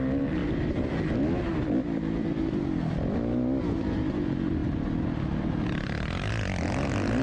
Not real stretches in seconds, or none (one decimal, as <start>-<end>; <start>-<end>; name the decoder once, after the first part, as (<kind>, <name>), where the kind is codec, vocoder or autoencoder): none